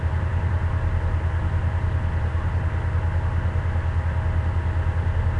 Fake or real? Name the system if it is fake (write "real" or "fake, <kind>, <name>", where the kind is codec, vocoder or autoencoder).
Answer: real